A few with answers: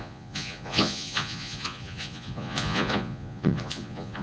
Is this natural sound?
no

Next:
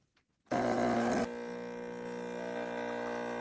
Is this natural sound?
yes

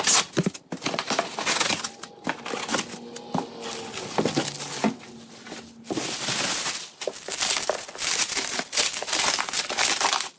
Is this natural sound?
yes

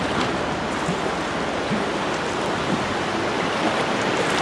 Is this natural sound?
yes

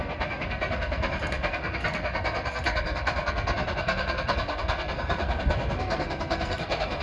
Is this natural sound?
no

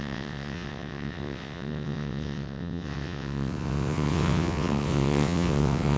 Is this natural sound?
no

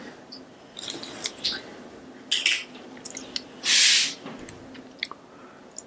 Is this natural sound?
yes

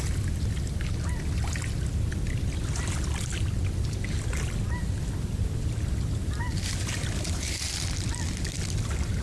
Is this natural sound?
yes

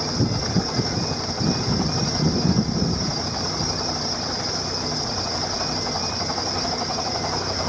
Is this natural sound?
yes